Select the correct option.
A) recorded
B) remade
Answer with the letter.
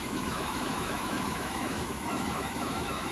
B